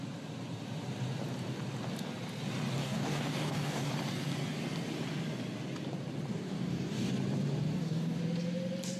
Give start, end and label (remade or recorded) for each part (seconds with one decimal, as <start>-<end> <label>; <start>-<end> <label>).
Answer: 0.0-2.8 recorded; 2.8-3.9 remade; 3.9-6.3 recorded; 6.3-7.1 remade; 7.1-7.6 recorded; 7.6-8.2 remade; 8.2-9.0 recorded